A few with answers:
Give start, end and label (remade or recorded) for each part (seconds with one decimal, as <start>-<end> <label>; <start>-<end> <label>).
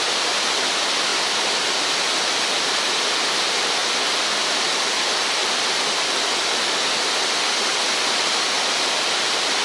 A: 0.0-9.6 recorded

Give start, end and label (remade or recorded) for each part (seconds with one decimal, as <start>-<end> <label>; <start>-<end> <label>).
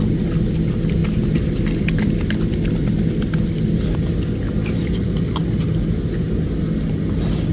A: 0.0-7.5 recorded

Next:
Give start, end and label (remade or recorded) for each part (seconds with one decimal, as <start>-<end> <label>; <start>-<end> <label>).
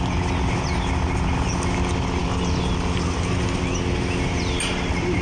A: 0.0-5.2 recorded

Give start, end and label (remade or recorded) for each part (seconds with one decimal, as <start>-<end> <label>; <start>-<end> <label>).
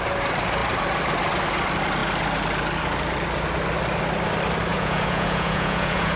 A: 0.0-4.7 recorded; 4.7-6.2 remade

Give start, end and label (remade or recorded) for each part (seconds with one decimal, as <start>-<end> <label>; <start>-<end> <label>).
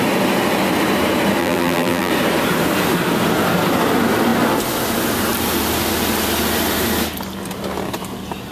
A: 0.0-1.4 recorded; 1.4-2.1 remade; 2.1-8.5 recorded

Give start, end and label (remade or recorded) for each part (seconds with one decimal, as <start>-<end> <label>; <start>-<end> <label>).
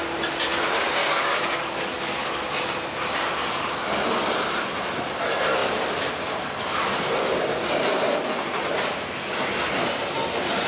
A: 0.0-1.0 recorded; 1.0-2.2 remade; 2.2-10.7 recorded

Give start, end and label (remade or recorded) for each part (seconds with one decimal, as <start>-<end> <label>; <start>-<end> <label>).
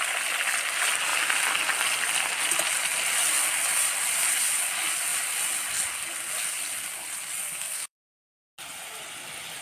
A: 0.0-7.4 recorded; 7.4-8.0 remade; 8.0-9.6 recorded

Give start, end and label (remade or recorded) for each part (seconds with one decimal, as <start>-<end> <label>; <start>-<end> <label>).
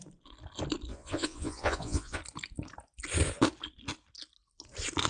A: 0.0-0.9 recorded; 0.9-2.2 remade; 2.2-5.1 recorded